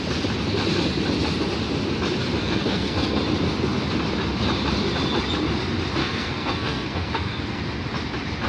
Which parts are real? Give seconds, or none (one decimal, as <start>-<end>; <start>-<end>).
0.0-2.4; 3.2-6.0; 7.6-8.5

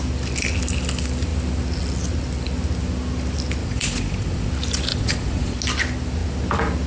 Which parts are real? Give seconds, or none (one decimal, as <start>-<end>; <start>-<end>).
0.0-3.6; 4.5-4.9; 5.6-6.9

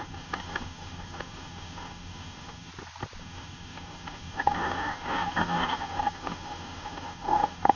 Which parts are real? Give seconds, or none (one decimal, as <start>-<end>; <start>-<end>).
2.7-3.2

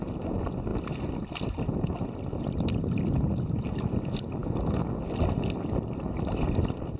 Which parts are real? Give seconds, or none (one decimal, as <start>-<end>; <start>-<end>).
0.0-7.0

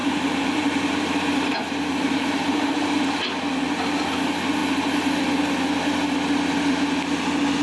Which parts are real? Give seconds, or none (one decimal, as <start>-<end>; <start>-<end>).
2.9-7.6

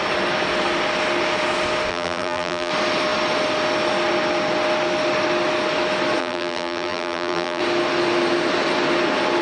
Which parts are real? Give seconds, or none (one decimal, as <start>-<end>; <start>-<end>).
0.0-1.9; 2.7-6.2; 7.6-9.4